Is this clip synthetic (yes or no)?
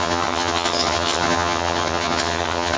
yes